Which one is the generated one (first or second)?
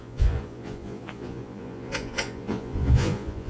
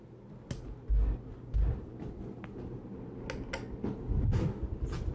first